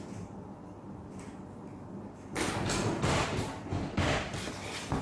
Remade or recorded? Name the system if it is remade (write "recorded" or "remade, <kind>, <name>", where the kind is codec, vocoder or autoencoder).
remade, vocoder, BigVGAN v2